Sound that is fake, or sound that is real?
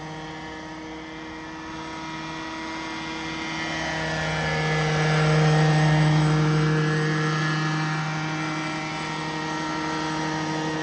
real